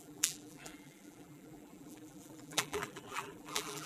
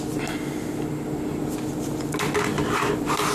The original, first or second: second